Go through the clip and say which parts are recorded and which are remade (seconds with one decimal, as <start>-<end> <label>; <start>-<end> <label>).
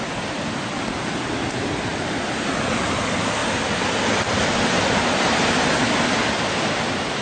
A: 0.0-1.9 remade; 1.9-2.7 recorded; 2.7-3.4 remade; 3.4-4.5 recorded; 4.5-7.2 remade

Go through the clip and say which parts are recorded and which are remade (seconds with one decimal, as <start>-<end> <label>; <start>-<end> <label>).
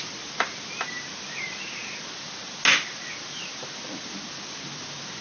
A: 0.0-5.2 recorded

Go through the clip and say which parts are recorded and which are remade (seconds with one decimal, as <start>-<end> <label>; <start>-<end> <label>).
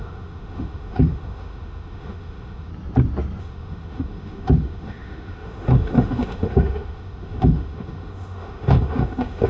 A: 0.0-2.7 remade; 2.7-3.4 recorded; 3.4-9.5 remade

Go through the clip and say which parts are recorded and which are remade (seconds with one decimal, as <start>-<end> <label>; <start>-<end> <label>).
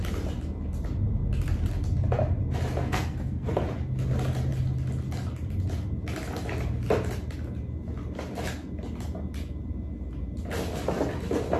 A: 0.0-2.8 recorded; 2.8-3.6 remade; 3.6-11.6 recorded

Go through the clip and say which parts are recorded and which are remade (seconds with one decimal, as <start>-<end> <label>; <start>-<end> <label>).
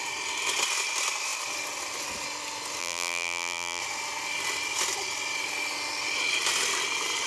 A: 0.0-2.8 recorded; 2.8-3.8 remade; 3.8-7.3 recorded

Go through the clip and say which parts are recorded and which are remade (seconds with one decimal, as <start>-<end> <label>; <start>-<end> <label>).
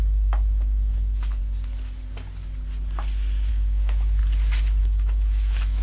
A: 0.0-1.4 remade; 1.4-3.5 recorded; 3.5-4.2 remade; 4.2-4.8 recorded; 4.8-5.8 remade